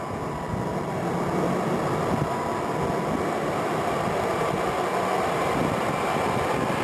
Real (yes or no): yes